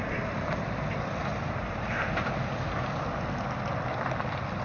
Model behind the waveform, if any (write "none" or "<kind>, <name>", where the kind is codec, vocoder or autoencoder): none